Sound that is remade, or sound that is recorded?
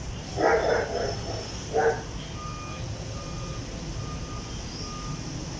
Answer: recorded